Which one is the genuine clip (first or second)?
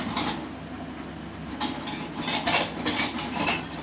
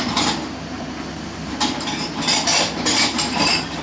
first